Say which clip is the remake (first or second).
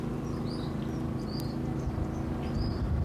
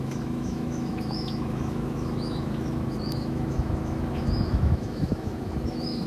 second